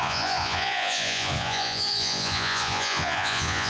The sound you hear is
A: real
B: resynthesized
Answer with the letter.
B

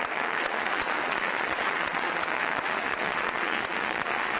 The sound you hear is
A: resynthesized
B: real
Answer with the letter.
A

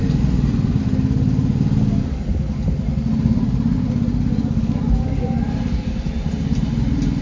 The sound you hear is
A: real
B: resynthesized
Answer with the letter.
A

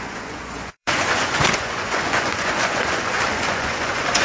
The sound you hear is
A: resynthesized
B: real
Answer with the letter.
A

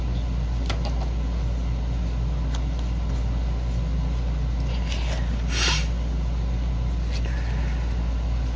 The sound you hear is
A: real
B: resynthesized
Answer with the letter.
A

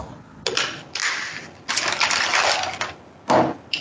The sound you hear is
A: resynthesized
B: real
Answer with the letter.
B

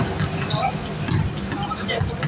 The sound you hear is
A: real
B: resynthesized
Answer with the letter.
A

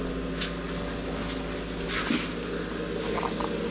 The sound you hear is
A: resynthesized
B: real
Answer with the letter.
B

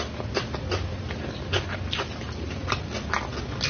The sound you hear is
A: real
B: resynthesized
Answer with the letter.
A